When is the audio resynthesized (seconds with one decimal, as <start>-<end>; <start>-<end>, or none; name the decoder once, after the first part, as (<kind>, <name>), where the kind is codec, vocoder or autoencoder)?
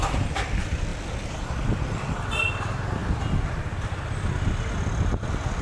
none